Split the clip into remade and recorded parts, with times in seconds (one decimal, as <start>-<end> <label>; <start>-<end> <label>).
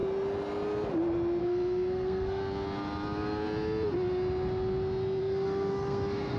0.0-1.4 recorded; 1.4-2.4 remade; 2.4-5.2 recorded; 5.2-6.4 remade